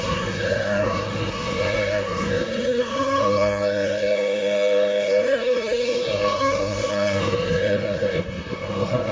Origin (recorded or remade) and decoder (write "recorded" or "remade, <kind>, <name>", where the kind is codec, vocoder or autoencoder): remade, codec, SNAC